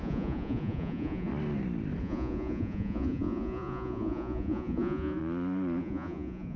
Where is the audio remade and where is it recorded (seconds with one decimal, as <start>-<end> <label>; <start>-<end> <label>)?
0.0-1.3 remade; 1.3-2.0 recorded; 2.0-5.2 remade; 5.2-5.8 recorded; 5.8-6.6 remade